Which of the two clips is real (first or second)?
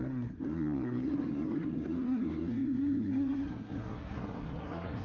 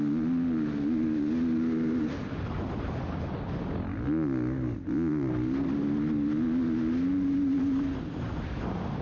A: second